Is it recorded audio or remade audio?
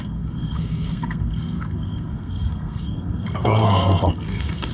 remade